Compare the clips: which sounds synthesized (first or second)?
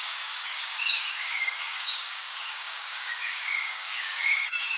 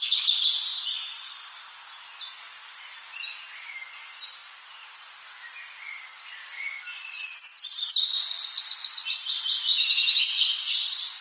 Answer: first